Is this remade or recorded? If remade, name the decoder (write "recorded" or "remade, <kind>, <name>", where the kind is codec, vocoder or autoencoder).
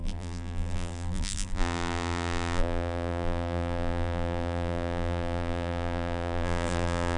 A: remade, vocoder, BigVGAN v2